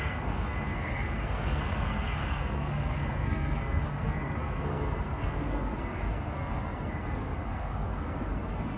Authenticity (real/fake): fake